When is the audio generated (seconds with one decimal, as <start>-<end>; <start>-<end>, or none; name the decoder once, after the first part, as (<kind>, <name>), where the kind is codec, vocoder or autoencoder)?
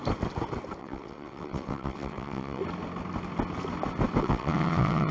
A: 0.8-2.6 (vocoder, WaveNeXt); 4.2-5.1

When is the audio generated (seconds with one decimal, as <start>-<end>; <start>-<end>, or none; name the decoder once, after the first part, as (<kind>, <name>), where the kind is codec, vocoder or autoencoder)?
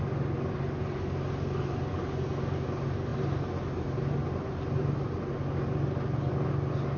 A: none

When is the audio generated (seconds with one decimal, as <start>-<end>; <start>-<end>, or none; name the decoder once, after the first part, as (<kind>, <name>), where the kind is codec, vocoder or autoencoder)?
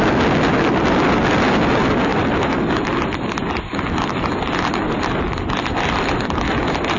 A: none